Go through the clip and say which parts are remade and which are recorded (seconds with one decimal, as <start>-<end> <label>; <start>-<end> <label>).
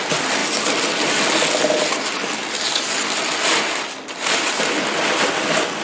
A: 0.0-5.8 recorded